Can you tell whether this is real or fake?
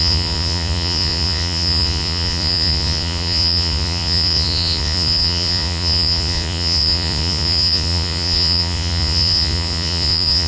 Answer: fake